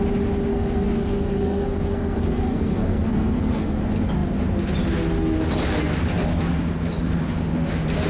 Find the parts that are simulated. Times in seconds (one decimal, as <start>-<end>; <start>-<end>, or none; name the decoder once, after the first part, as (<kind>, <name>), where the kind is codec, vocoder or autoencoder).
0.5-3.8 (codec, SNAC)